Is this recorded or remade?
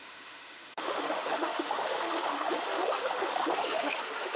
remade